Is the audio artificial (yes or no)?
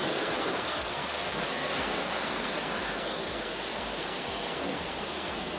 yes